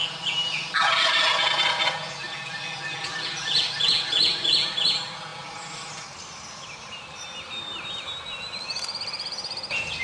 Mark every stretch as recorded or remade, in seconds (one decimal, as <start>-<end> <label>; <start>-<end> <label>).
0.0-10.0 recorded